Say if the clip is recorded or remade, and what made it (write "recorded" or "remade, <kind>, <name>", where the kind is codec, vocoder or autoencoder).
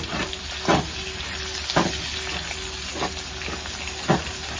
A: recorded